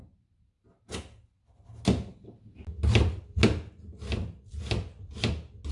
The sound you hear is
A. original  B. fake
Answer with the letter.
A